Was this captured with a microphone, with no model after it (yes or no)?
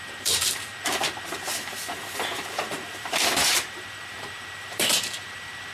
no